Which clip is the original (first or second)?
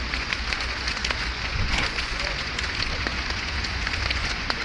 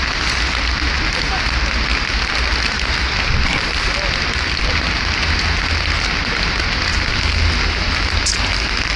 second